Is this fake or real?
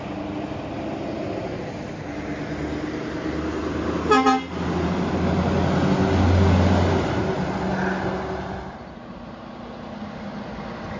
real